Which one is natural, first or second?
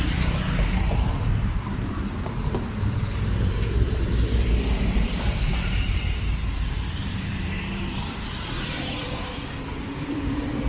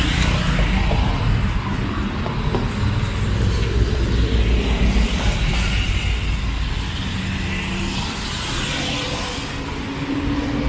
second